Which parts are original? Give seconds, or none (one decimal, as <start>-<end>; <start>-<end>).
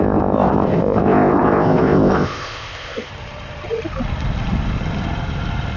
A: 3.1-5.8